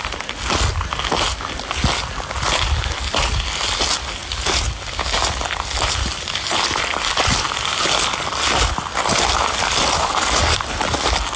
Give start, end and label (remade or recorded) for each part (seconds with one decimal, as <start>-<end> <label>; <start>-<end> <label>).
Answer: 0.0-11.4 recorded